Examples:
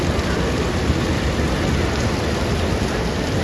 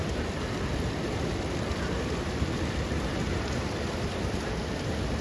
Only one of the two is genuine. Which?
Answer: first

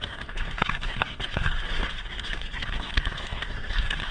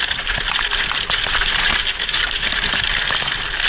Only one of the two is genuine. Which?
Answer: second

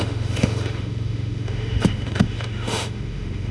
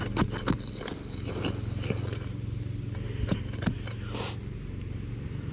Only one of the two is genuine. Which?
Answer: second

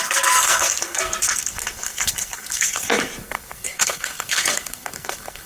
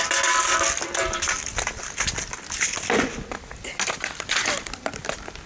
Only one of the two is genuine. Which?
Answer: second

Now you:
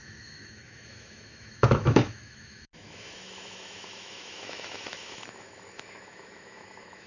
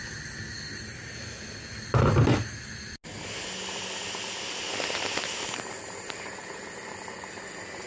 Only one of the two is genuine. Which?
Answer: second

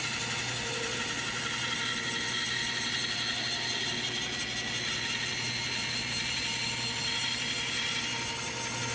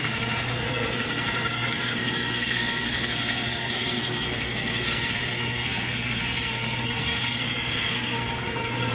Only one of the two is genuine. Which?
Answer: first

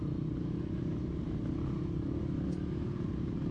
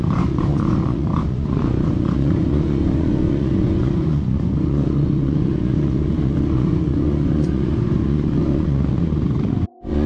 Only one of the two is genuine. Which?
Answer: first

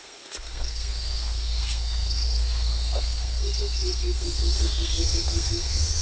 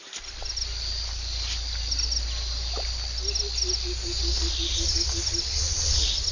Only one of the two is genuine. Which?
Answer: second